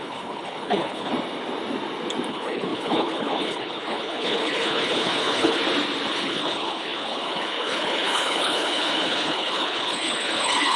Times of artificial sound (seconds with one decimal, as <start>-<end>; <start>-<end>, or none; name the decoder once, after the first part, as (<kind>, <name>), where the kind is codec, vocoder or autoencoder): 0.0-1.1 (codec, HILCodec); 2.3-5.6; 6.1-10.8